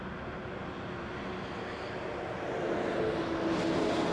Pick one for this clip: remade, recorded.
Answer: recorded